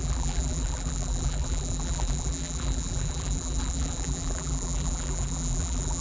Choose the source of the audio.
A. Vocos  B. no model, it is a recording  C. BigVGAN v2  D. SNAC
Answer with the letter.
C